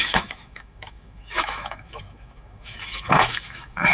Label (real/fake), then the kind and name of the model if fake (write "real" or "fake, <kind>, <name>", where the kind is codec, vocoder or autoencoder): fake, autoencoder, DAC-VAE